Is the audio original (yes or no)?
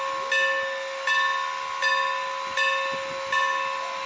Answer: yes